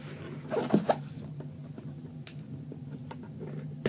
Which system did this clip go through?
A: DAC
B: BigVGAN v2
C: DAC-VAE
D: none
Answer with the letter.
D